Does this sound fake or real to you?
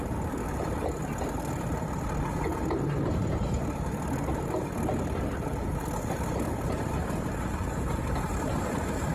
real